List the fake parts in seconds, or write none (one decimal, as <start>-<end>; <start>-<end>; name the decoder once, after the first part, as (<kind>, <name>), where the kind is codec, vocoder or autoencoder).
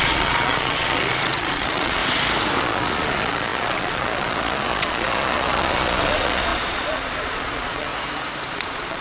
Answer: 0.0-2.0 (vocoder, Vocos); 2.6-7.9; 8.5-9.0